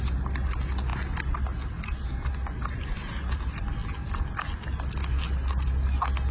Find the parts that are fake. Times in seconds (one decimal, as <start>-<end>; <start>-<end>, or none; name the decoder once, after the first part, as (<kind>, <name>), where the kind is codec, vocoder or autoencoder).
none